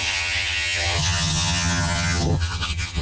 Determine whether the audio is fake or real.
fake